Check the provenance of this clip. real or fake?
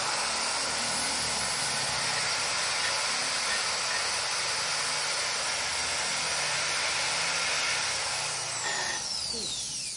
real